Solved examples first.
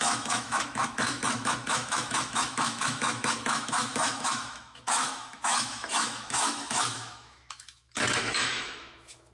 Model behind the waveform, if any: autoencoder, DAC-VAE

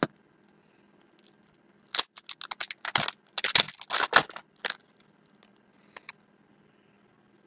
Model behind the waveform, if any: none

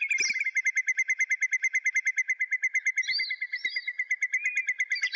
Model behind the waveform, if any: none